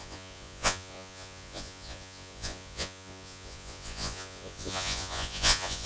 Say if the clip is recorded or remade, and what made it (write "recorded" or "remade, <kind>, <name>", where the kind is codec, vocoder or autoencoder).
remade, vocoder, Vocos